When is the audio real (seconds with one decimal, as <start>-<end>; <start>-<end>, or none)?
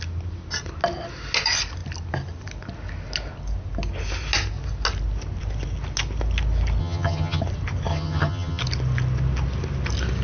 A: 0.0-6.8; 7.4-7.9; 8.6-10.2